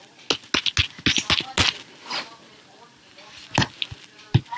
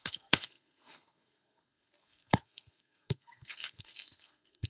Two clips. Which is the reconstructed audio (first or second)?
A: second